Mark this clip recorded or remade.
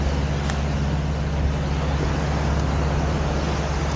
recorded